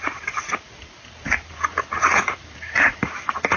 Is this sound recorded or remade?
remade